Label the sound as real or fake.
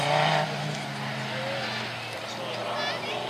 real